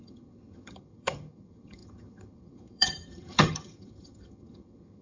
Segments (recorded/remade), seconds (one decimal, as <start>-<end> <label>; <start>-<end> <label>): 0.0-5.0 remade